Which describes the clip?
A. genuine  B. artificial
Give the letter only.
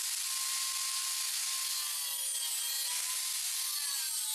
A